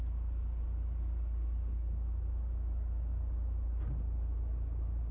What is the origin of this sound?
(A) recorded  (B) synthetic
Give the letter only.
A